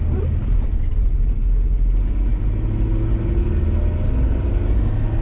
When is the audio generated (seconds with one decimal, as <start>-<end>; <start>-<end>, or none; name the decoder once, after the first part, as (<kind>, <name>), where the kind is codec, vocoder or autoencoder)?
0.4-1.2 (vocoder, BigVGAN v2)